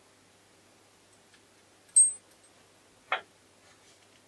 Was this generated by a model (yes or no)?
no